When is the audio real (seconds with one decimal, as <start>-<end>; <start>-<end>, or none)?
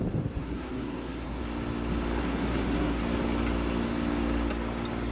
0.0-0.4; 1.4-2.2; 3.0-5.1